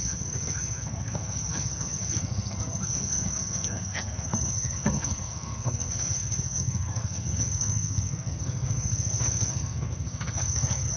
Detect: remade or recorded remade